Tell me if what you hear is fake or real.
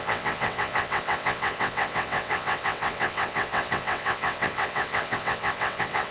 fake